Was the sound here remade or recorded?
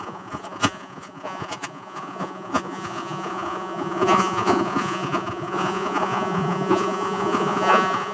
remade